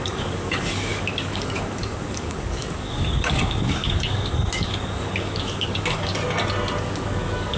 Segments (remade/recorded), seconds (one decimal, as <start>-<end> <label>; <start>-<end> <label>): 0.0-6.1 remade; 6.1-6.8 recorded; 6.8-7.6 remade

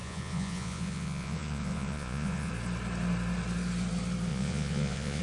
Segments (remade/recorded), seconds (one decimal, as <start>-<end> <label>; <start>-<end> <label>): 0.0-2.5 remade; 2.5-4.3 recorded; 4.3-5.2 remade